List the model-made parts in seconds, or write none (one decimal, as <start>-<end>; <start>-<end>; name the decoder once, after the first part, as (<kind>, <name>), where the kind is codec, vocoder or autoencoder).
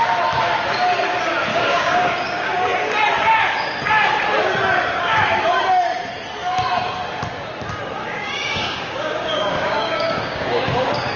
1.5-2.6 (codec, DAC); 4.9-5.6; 8.0-11.2